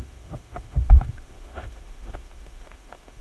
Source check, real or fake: fake